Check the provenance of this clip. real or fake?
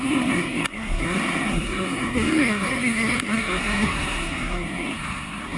fake